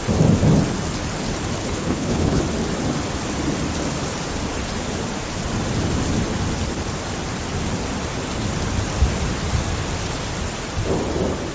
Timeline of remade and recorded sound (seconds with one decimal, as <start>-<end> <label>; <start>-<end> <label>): 0.0-1.6 recorded; 1.6-2.4 remade; 2.4-11.5 recorded